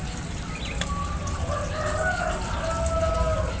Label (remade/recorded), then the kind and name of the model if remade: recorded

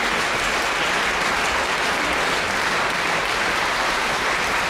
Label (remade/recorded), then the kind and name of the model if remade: recorded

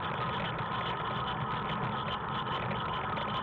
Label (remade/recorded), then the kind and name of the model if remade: recorded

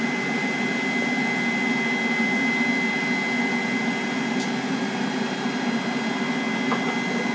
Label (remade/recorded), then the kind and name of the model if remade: recorded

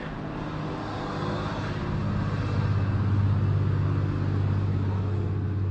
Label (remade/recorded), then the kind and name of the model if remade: recorded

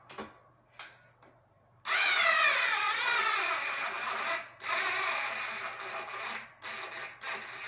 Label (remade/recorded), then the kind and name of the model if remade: recorded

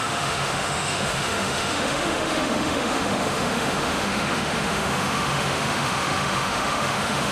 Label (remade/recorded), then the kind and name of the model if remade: remade, autoencoder, DAC-VAE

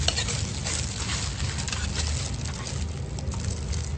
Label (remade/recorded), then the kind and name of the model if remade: recorded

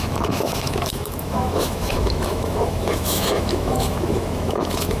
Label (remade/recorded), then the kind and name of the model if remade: remade, autoencoder, DAC-VAE